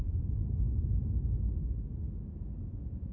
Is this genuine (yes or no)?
yes